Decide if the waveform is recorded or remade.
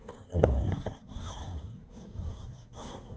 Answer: remade